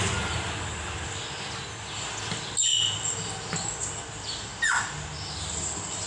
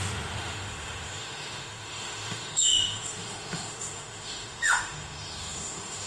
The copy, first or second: second